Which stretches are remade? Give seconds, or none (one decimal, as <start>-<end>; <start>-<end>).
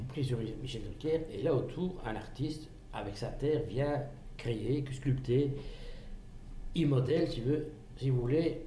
5.5-7.1